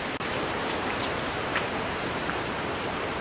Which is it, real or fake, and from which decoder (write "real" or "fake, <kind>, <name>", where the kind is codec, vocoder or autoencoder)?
fake, vocoder, BigVGAN v2